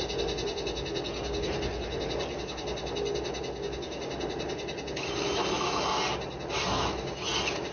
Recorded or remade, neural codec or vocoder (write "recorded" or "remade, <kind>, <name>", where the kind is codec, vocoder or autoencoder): recorded